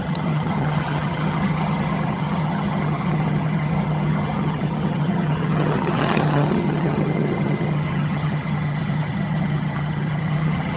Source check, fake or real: fake